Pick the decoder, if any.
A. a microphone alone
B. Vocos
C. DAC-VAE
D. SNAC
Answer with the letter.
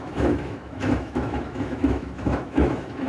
C